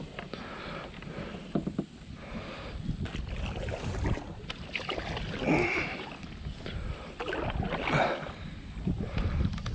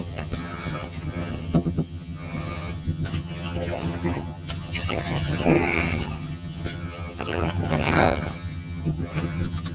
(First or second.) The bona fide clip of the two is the first